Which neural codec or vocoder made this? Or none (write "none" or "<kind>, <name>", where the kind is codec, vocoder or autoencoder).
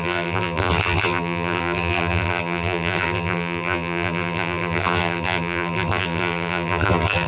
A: vocoder, BigVGAN v2